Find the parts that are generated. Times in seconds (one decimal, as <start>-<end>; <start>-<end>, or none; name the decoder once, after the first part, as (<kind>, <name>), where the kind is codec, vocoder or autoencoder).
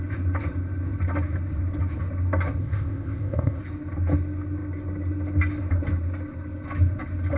2.6-3.6 (codec, ZipCodec)